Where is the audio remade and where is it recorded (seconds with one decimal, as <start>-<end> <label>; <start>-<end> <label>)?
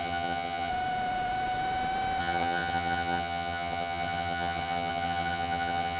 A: 0.0-0.7 remade; 0.7-2.2 recorded; 2.2-6.0 remade